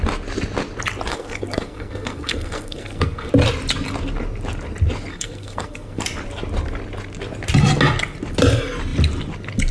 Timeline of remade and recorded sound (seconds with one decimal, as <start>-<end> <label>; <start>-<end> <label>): 0.0-1.1 recorded; 1.1-3.3 remade; 3.3-5.1 recorded; 5.1-6.0 remade; 6.0-9.7 recorded